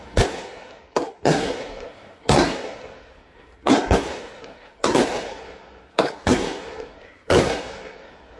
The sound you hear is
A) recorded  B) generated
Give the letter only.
B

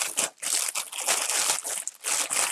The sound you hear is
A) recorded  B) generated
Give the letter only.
A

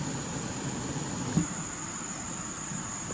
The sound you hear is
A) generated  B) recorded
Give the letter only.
A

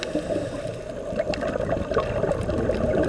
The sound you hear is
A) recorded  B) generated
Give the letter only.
A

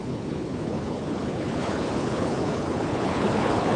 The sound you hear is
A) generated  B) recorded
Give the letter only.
A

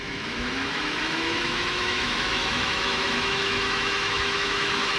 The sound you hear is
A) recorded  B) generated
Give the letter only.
B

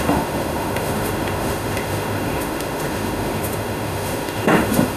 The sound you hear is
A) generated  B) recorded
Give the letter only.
A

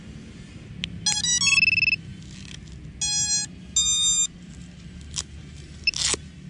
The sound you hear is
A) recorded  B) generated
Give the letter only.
A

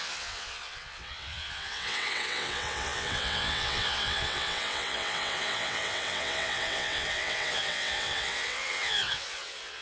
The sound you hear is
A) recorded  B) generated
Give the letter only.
B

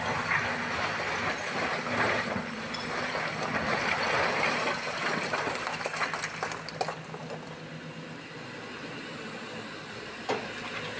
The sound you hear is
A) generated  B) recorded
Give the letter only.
B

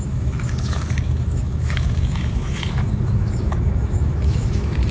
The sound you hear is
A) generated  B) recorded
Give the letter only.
A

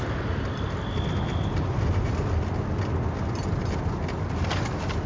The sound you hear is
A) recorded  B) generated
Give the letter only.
A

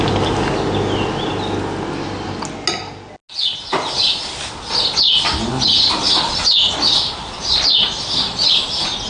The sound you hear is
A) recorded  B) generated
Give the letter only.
A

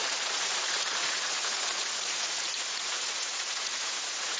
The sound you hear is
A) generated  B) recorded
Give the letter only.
A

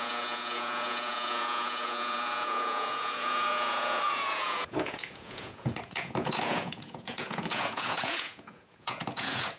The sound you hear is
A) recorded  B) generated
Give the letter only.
B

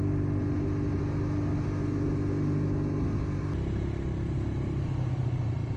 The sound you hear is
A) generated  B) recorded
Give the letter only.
B